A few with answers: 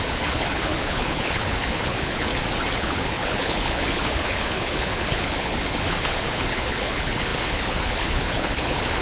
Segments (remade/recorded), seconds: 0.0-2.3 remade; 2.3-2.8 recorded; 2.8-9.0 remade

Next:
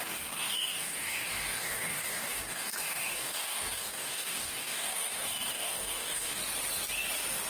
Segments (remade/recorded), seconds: 0.0-6.4 remade; 6.4-7.5 recorded

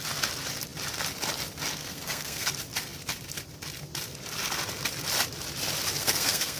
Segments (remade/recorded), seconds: 0.0-1.8 recorded; 1.8-2.5 remade; 2.5-6.0 recorded; 6.0-6.6 remade

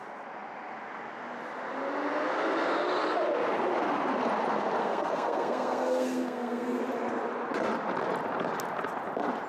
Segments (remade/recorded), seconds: 0.0-4.8 recorded; 4.8-6.8 remade; 6.8-9.5 recorded

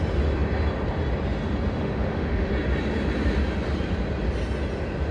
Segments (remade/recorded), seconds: 0.0-1.8 recorded; 1.8-2.5 remade; 2.5-5.1 recorded

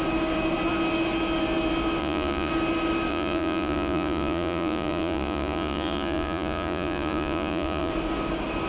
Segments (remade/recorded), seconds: 0.0-2.0 recorded; 2.0-2.5 remade; 2.5-3.1 recorded; 3.1-7.9 remade; 7.9-8.7 recorded

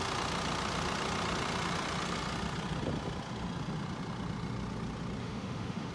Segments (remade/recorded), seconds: 0.0-5.2 recorded; 5.2-5.9 remade